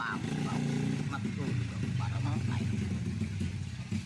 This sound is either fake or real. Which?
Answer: real